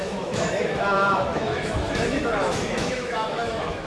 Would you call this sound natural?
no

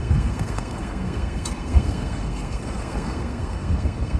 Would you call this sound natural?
no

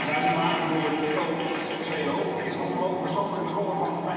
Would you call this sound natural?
yes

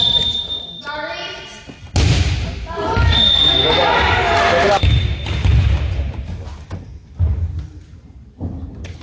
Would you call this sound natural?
yes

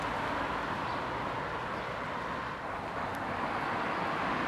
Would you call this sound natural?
yes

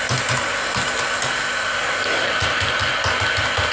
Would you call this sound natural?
yes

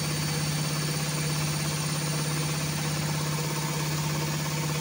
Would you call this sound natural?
yes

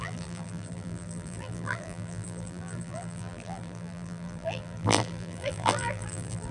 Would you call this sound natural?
no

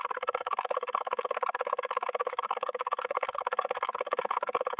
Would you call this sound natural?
no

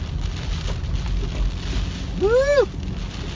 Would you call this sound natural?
yes